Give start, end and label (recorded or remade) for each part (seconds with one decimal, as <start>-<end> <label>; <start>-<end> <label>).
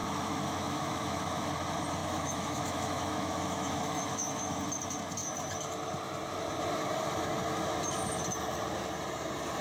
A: 0.0-1.5 remade; 1.5-2.0 recorded; 2.0-4.6 remade; 4.6-9.6 recorded